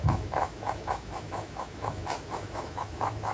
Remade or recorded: remade